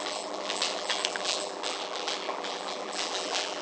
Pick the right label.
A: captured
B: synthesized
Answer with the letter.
B